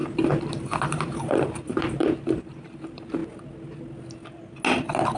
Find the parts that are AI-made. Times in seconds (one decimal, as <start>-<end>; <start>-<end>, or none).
0.0-3.2